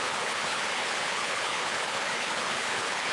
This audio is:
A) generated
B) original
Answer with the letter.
A